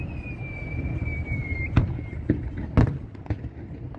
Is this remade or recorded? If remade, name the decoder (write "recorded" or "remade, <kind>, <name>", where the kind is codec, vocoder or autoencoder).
recorded